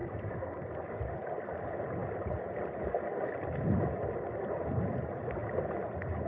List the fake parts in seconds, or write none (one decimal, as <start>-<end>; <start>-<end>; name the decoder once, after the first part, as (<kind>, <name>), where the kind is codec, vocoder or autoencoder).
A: 0.0-1.0 (codec, DAC)

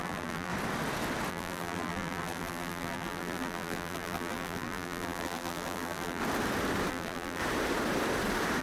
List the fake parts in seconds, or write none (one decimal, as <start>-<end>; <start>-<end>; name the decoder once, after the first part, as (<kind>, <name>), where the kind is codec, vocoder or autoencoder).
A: 0.0-0.5 (vocoder, BigVGAN v2); 1.3-6.2; 6.9-7.4

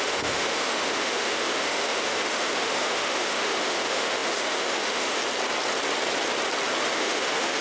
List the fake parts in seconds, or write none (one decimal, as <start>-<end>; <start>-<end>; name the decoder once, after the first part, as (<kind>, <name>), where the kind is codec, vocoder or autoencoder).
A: 0.0-5.2 (autoencoder, DAC-VAE); 6.9-7.6